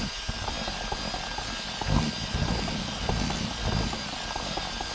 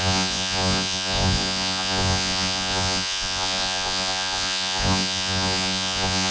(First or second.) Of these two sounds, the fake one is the second